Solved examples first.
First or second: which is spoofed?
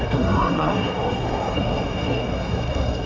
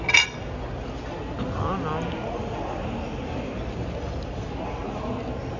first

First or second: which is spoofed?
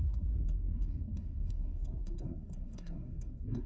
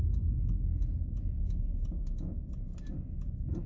first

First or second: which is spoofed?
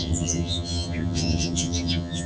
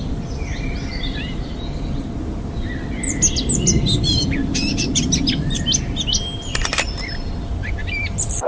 first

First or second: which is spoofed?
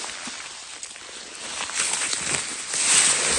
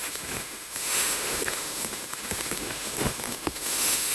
second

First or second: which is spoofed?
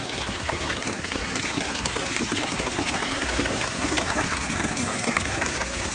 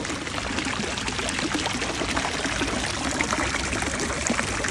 first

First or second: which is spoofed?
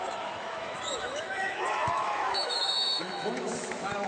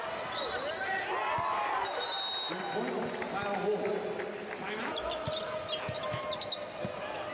first